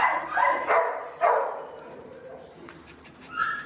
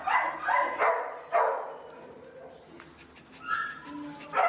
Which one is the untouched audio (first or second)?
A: second